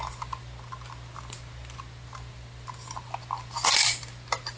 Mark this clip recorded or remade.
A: recorded